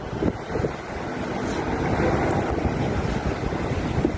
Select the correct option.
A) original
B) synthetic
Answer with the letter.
A